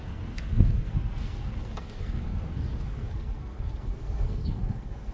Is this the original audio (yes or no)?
no